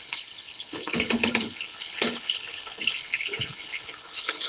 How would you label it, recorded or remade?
remade